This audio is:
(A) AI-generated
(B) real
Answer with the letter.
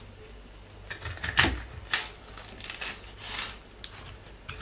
B